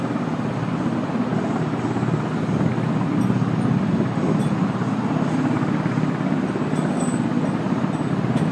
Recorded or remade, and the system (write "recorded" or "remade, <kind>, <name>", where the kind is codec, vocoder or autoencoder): recorded